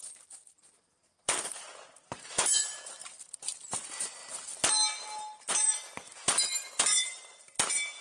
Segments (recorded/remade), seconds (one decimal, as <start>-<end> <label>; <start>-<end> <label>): 0.0-4.2 remade; 4.2-5.5 recorded; 5.5-8.0 remade